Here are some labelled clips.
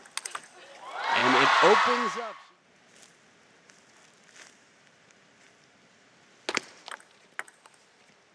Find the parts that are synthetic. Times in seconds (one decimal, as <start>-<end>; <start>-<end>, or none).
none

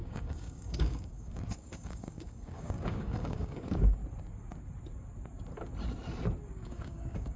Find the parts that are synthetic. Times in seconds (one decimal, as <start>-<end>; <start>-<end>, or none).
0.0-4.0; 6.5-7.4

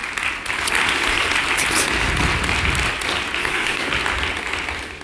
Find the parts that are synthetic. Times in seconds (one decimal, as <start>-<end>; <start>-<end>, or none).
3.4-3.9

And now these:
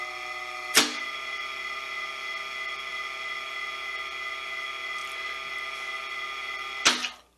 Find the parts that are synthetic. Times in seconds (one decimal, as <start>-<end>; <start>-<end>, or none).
none

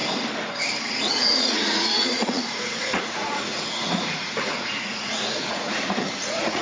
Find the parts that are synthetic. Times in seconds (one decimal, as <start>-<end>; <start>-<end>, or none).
1.0-6.6